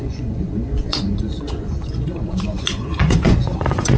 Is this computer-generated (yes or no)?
yes